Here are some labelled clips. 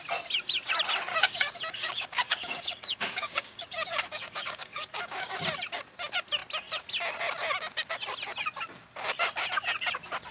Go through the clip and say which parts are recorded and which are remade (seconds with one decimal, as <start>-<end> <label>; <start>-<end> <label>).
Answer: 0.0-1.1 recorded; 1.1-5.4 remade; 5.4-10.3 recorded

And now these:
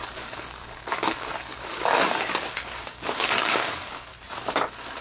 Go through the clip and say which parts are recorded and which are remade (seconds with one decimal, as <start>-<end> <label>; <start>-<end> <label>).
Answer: 0.0-4.1 remade; 4.1-5.0 recorded

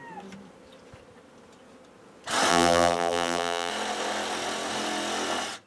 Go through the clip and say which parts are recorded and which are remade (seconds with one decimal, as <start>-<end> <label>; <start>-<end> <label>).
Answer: 0.0-2.5 recorded; 2.5-3.7 remade; 3.7-5.7 recorded